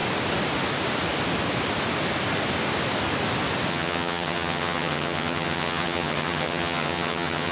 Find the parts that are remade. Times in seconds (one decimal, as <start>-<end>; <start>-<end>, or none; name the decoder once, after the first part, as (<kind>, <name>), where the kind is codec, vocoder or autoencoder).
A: 3.7-7.5 (vocoder, HiFi-GAN)